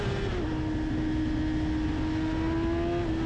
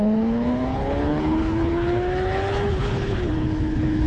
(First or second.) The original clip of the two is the first